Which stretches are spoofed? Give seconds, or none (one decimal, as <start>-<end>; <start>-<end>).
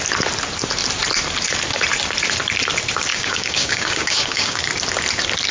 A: 3.1-4.6